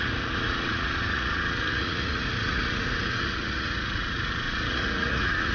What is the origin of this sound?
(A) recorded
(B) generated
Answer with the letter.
B